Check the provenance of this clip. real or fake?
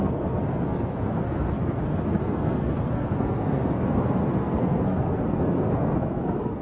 fake